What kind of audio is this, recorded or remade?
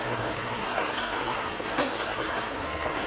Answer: remade